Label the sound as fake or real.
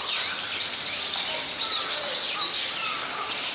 real